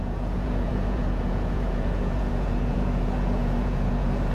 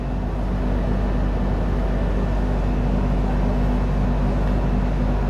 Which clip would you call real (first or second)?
second